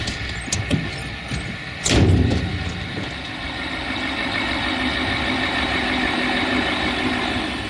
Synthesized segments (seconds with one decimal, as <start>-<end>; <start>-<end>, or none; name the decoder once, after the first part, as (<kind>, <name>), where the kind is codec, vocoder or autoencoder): none